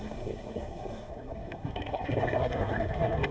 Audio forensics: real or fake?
fake